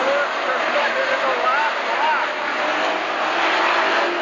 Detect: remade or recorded recorded